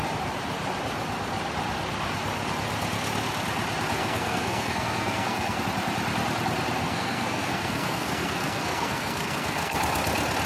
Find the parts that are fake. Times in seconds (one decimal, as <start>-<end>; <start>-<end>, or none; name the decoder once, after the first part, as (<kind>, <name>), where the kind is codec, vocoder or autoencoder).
4.0-5.6 (codec, SNAC); 6.8-9.8